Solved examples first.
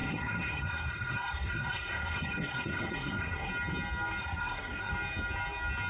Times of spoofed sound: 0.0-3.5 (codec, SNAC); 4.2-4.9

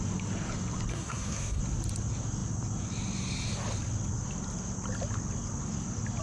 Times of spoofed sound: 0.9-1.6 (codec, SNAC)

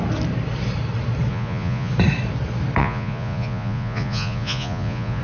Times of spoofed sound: 1.3-1.9 (vocoder, Vocos); 2.8-5.2

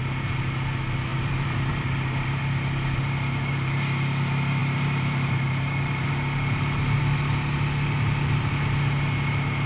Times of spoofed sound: 1.1-2.4 (vocoder, BigVGAN v2); 4.6-6.1